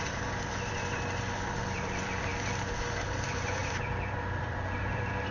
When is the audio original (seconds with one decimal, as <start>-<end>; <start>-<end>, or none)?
2.3-3.0